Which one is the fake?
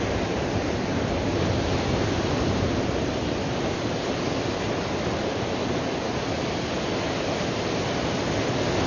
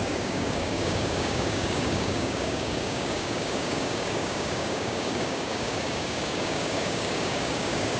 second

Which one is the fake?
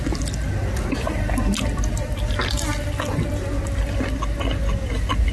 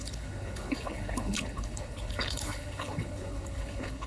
second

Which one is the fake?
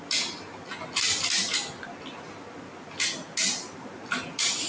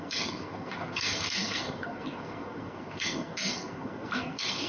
second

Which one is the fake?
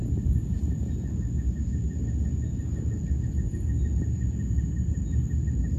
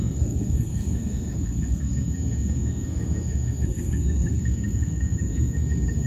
second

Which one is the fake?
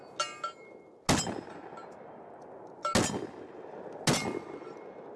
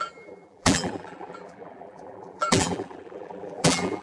second